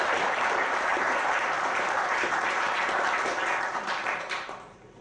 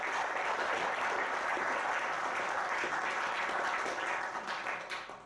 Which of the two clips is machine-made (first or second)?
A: first